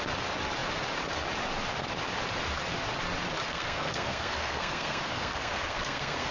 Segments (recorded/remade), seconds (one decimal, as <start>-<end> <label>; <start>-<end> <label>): 0.0-3.4 recorded; 3.4-6.3 remade